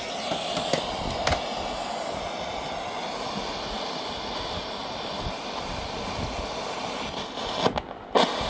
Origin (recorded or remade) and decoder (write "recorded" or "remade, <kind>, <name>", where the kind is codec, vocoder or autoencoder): recorded